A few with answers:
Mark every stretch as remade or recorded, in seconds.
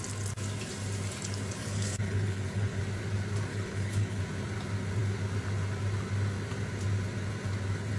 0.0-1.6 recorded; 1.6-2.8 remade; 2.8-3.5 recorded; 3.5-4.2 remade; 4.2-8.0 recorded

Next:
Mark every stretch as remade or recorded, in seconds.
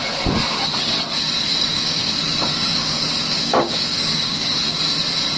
0.0-1.5 recorded; 1.5-4.7 remade; 4.7-5.4 recorded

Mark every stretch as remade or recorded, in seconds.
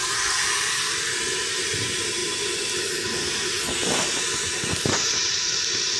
0.0-6.0 recorded